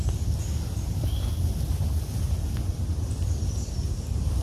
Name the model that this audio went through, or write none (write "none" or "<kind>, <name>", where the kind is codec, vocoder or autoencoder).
none